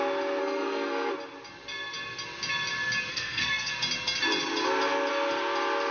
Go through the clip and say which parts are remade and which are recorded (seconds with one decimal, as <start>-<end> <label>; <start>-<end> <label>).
0.0-0.4 recorded; 0.4-1.1 remade; 1.1-3.1 recorded; 3.1-3.7 remade; 3.7-5.9 recorded

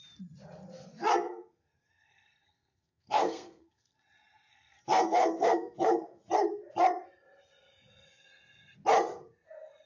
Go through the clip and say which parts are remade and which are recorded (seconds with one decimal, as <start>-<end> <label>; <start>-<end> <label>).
0.0-0.9 recorded; 0.9-3.9 remade; 3.9-4.5 recorded; 4.5-6.2 remade; 6.2-9.9 recorded